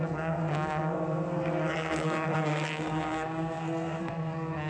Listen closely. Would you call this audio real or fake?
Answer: fake